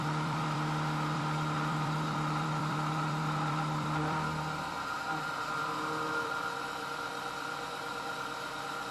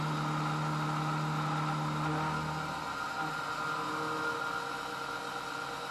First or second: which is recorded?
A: second